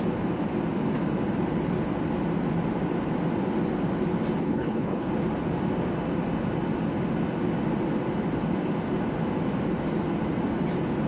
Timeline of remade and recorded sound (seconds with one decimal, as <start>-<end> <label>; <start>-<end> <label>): 0.0-4.4 recorded; 4.4-5.1 remade; 5.1-11.1 recorded